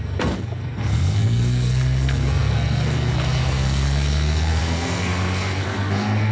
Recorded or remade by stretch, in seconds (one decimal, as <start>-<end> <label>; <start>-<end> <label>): 0.0-6.3 remade